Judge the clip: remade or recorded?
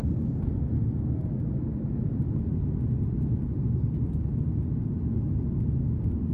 recorded